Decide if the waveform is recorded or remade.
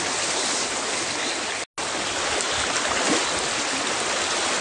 recorded